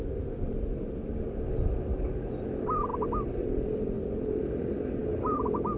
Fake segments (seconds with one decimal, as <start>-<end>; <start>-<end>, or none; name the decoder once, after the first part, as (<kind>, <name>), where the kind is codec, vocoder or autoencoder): none